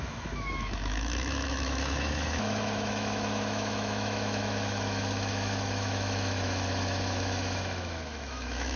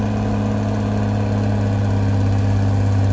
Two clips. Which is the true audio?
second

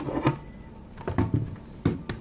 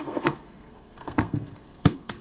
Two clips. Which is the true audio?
first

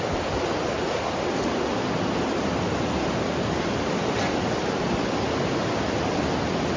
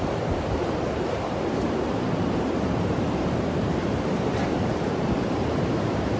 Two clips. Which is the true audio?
first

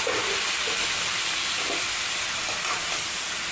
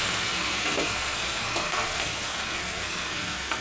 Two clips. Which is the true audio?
first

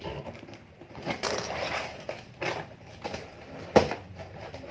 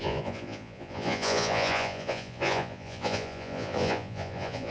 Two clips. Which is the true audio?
first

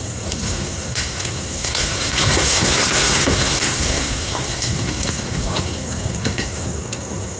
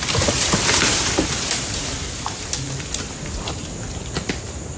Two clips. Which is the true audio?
second